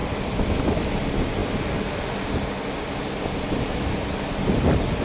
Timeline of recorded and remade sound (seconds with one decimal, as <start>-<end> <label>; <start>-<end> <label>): 0.0-5.0 recorded